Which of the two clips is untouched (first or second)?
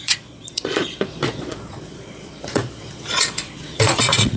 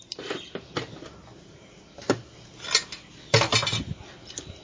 second